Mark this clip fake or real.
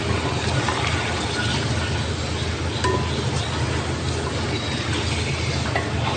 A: real